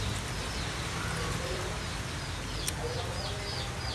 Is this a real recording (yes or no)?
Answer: yes